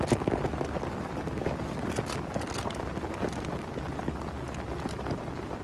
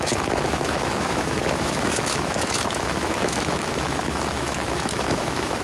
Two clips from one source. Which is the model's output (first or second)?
second